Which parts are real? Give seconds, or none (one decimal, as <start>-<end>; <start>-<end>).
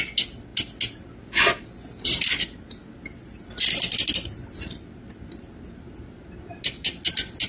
0.0-7.5